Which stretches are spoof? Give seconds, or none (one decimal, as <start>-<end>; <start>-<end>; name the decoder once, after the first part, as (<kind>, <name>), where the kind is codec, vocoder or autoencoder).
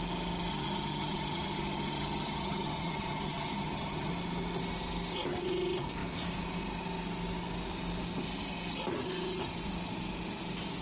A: 0.5-4.1 (vocoder, HiFi-GAN)